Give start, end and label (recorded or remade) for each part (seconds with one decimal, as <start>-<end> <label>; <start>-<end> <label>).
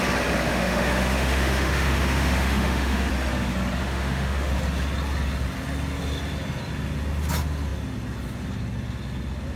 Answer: 0.0-0.5 recorded; 0.5-3.1 remade; 3.1-3.8 recorded; 3.8-4.5 remade; 4.5-9.6 recorded